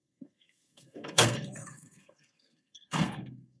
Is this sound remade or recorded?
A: remade